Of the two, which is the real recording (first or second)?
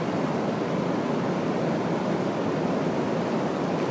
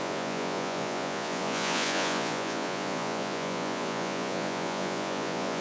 first